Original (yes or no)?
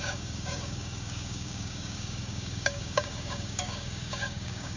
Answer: no